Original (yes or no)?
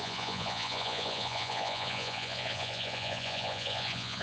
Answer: no